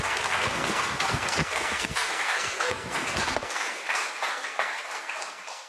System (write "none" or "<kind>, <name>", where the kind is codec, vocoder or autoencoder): codec, SNAC